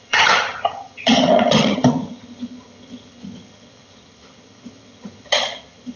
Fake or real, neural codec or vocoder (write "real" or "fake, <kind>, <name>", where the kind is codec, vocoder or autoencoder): fake, vocoder, HiFi-GAN